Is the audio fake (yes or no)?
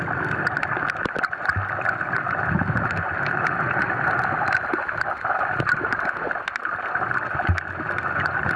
no